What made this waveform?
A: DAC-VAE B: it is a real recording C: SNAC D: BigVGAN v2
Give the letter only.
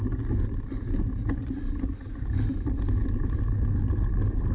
B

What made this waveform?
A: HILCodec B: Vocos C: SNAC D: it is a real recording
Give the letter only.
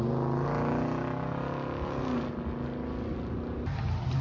D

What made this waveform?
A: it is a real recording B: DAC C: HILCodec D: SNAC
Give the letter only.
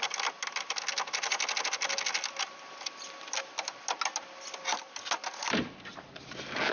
A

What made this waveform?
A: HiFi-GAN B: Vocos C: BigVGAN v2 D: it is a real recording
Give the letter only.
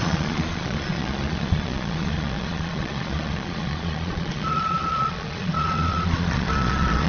B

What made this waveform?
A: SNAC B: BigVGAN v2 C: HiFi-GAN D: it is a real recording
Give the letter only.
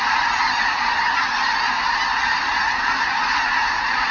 D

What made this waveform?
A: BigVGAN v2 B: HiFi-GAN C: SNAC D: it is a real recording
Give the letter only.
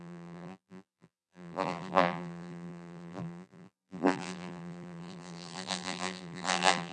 A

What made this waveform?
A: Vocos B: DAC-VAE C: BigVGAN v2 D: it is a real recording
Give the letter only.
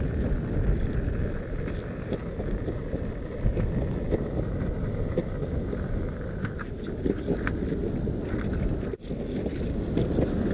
D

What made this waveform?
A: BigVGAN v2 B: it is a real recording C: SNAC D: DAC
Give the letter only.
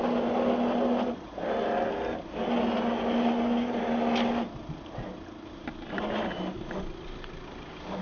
B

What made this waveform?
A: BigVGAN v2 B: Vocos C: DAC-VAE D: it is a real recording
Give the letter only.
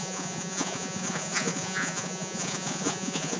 B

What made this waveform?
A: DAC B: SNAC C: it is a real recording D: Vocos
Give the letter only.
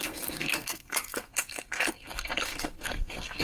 B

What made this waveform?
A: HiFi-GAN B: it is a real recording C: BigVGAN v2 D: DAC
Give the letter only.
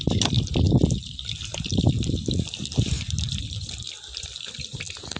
B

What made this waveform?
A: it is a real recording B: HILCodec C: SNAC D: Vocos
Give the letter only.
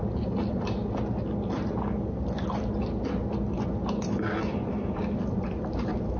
A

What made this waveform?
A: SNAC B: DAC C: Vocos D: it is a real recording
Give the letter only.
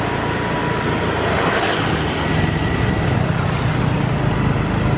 D